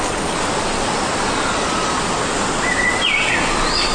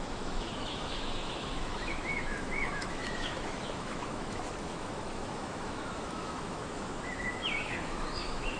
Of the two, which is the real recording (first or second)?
first